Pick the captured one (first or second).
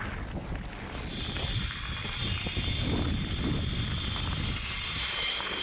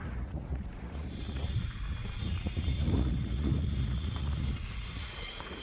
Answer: first